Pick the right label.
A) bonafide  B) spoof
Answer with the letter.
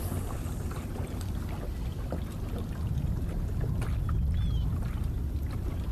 A